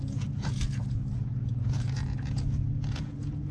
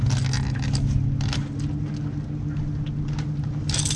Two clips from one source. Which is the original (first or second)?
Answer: second